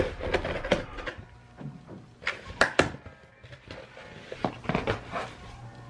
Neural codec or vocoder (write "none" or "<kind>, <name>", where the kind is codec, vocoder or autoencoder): none